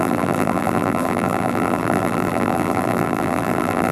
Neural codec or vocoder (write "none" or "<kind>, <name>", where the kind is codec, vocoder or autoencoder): vocoder, BigVGAN v2